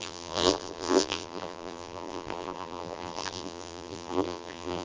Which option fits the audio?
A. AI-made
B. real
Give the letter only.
A